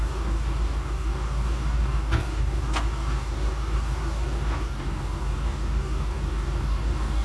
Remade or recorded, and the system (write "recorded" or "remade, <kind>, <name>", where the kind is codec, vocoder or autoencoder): remade, codec, DAC